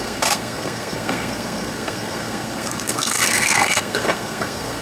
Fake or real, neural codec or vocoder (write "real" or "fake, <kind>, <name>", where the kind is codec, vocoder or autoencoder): fake, codec, SNAC